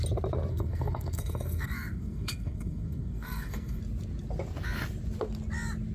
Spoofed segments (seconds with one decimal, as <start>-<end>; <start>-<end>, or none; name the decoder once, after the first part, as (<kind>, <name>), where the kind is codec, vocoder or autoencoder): 0.5-3.8 (codec, SNAC)